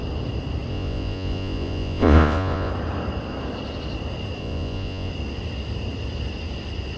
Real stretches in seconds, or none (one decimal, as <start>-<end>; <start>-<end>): 0.0-0.7; 2.7-4.4; 5.1-7.0